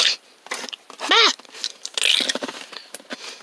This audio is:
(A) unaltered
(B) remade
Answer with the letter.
A